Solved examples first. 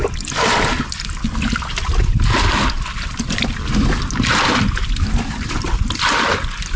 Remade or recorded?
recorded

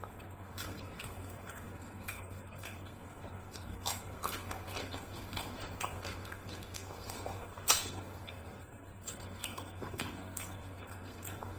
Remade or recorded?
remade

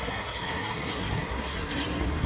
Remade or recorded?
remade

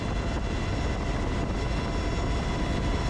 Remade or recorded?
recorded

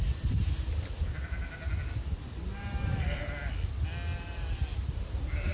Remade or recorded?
recorded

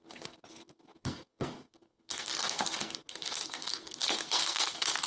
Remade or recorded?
remade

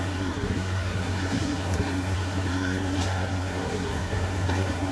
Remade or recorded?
remade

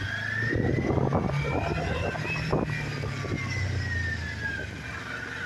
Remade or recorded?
recorded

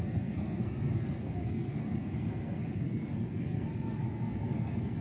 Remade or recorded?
remade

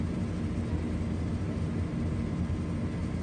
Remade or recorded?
recorded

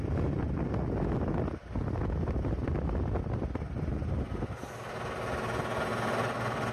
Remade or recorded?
recorded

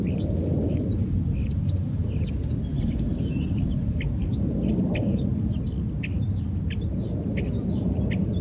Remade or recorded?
recorded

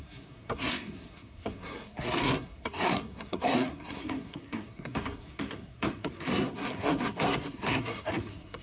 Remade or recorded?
remade